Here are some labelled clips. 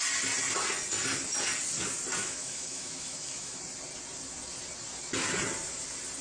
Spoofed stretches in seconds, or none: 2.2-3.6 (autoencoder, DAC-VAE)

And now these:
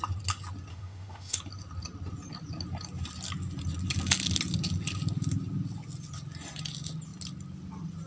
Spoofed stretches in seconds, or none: 0.7-1.4 (autoencoder, DAC-VAE)

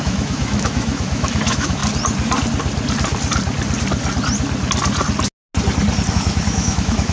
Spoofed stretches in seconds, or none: 0.0-1.8 (autoencoder, DAC-VAE); 6.1-7.1

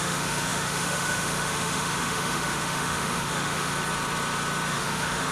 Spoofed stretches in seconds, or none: 0.0-3.7 (autoencoder, DAC-VAE); 4.7-5.3

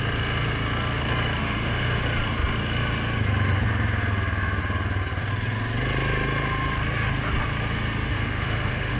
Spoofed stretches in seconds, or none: 1.4-2.0 (autoencoder, DAC-VAE); 8.1-9.0

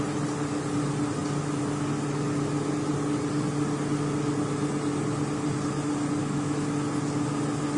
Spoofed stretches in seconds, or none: 6.2-6.7 (autoencoder, DAC-VAE)